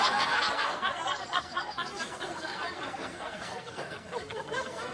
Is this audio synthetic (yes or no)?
yes